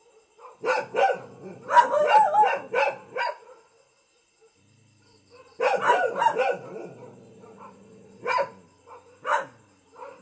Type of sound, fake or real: real